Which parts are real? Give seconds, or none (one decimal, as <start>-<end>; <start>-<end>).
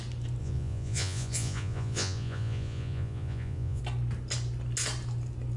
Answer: 0.0-0.4; 3.8-5.6